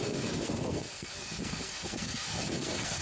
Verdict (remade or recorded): remade